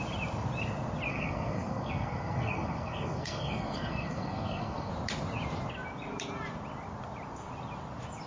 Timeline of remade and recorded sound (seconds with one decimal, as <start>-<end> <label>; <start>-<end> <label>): 0.0-1.1 recorded; 1.1-4.9 remade; 4.9-8.3 recorded